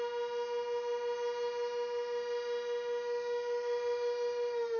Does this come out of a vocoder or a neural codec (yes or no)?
no